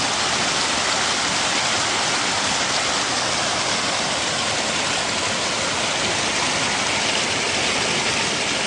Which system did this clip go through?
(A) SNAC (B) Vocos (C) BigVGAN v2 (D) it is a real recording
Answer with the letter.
D